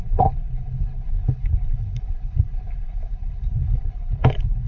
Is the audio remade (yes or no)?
yes